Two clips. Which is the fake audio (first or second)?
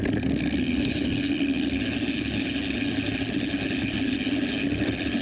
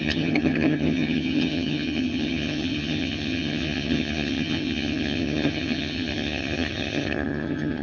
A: second